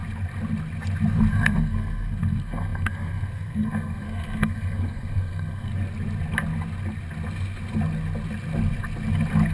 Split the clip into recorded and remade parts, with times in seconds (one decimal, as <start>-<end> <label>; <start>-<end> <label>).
0.0-1.3 recorded; 1.3-5.7 remade; 5.7-9.5 recorded